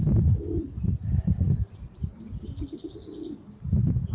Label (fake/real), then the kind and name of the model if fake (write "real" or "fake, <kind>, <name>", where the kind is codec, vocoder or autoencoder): real